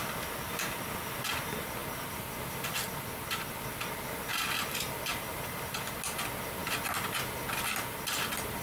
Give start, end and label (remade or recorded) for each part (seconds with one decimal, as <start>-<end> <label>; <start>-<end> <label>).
0.0-8.6 recorded